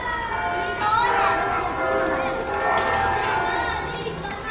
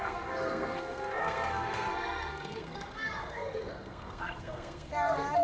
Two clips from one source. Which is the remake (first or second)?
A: second